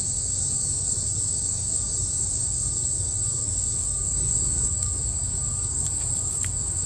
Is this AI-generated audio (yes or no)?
yes